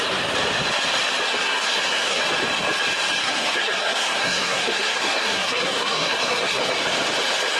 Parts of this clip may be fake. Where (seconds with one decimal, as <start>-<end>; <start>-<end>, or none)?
1.3-2.2; 3.2-6.6